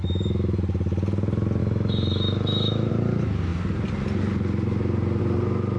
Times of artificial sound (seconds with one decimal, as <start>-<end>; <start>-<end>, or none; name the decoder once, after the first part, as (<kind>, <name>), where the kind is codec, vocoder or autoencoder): 0.0-0.6 (autoencoder, DAC-VAE); 1.6-2.9